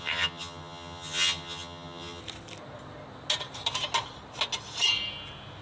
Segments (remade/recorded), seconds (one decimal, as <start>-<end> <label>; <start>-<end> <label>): 0.0-2.2 remade; 2.2-5.6 recorded